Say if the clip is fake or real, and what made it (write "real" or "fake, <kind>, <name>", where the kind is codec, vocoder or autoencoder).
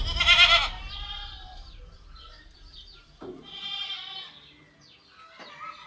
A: real